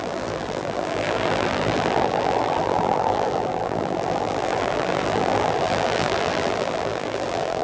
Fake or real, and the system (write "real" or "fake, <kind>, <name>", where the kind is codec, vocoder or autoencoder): fake, vocoder, BigVGAN v2